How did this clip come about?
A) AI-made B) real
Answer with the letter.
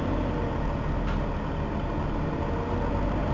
B